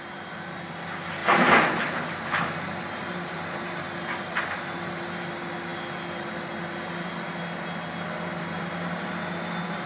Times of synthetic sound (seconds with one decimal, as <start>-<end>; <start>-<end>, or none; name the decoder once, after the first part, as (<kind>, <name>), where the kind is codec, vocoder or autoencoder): none